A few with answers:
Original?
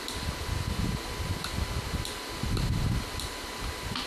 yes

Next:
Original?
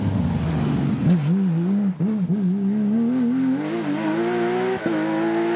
yes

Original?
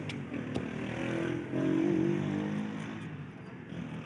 yes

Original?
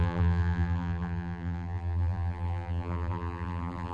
no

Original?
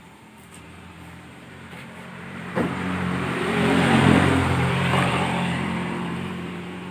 no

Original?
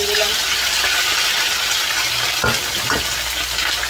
yes